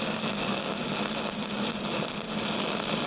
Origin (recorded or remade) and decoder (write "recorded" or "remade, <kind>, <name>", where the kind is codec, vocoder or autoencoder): recorded